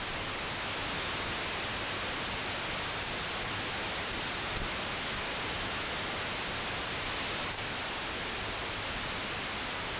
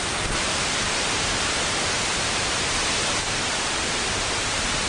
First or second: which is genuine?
first